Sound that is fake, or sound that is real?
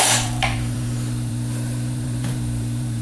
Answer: fake